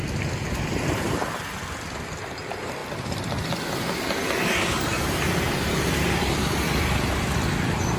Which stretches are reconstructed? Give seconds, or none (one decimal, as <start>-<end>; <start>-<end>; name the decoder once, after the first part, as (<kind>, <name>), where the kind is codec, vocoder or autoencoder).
2.8-3.8 (vocoder, BigVGAN v2)